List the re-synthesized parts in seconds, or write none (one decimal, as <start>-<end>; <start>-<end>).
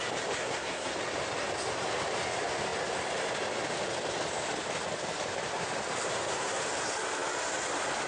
0.4-0.9; 6.1-6.6